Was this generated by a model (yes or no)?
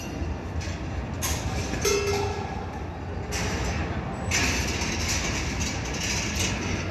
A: no